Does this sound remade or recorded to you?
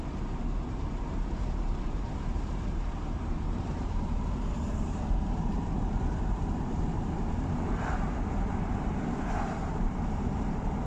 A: remade